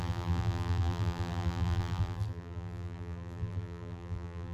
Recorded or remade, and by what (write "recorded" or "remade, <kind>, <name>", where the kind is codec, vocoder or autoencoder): remade, vocoder, BigVGAN v2